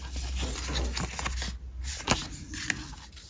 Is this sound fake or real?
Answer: real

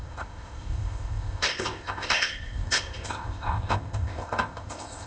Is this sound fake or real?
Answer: fake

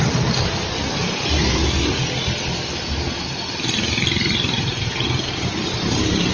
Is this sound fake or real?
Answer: real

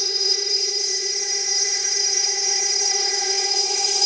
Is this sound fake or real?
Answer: fake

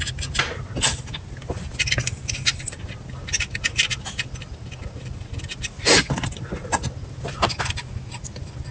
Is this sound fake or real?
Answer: real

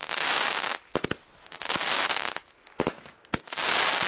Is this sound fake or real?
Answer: real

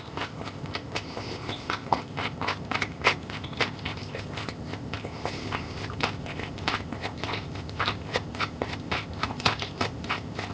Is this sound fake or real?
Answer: fake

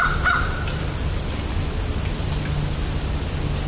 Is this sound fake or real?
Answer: real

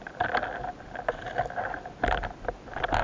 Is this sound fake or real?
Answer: real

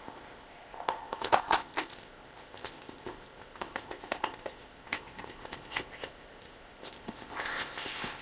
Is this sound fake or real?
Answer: fake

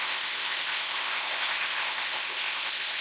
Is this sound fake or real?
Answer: fake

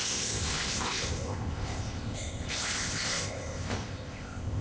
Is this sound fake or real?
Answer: fake